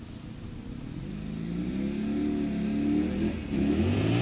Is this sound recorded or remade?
recorded